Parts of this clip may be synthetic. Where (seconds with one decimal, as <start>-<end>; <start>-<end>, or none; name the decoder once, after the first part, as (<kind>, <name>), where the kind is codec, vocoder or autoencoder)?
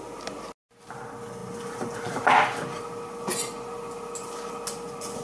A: none